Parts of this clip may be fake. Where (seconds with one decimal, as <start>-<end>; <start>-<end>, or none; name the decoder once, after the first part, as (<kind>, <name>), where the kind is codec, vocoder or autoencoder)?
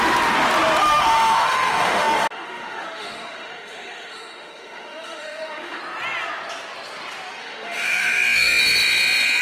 0.8-5.8 (autoencoder, DAC-VAE); 7.4-8.6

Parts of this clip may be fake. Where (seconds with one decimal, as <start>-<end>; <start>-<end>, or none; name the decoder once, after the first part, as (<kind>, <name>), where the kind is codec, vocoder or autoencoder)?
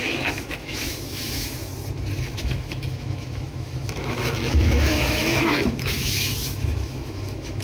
0.0-1.7 (autoencoder, DAC-VAE); 2.3-7.6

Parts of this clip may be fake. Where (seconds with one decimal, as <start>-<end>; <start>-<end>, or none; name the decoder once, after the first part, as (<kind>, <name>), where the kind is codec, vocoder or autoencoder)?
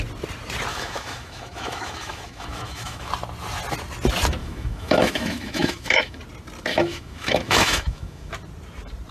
0.7-3.1 (autoencoder, DAC-VAE); 4.4-6.2; 6.7-8.3